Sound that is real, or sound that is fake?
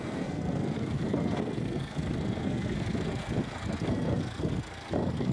fake